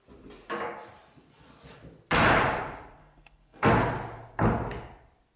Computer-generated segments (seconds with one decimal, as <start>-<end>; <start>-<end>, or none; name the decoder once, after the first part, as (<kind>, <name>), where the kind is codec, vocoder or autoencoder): 3.0-3.7 (codec, SNAC)

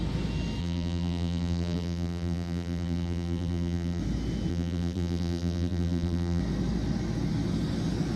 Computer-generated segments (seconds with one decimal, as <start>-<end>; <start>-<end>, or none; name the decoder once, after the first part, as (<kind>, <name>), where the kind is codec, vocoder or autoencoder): 0.6-4.0 (vocoder, BigVGAN v2); 4.5-6.4

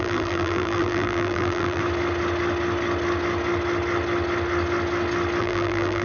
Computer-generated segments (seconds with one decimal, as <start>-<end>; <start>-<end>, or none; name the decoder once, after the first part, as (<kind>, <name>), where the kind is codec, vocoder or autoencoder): 0.0-1.8 (vocoder, BigVGAN v2); 5.4-6.0

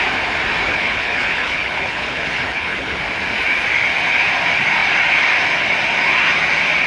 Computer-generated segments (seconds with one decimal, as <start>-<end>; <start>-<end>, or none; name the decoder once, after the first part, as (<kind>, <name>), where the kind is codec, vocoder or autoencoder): 0.7-3.0 (codec, HILCodec)

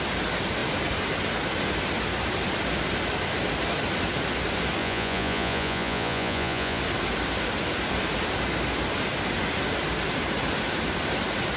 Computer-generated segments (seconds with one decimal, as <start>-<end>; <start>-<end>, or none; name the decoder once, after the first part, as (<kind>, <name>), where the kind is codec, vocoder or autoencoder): 4.8-6.8 (vocoder, Vocos)

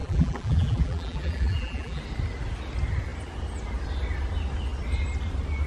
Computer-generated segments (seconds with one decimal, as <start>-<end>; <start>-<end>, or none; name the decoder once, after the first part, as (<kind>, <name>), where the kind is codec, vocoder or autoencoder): 0.0-2.0 (vocoder, BigVGAN v2)

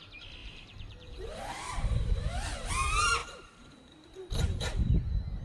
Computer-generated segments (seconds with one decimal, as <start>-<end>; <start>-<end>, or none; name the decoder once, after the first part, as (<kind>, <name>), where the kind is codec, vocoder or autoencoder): 0.4-2.7 (vocoder, BigVGAN v2); 3.2-4.3

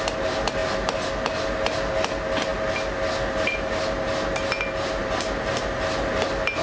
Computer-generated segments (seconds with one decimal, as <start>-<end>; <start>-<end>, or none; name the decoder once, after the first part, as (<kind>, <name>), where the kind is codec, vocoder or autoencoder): none